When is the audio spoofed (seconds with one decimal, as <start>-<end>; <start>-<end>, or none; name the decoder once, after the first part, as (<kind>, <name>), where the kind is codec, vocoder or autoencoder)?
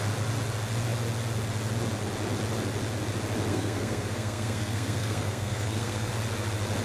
3.5-6.1 (codec, SNAC)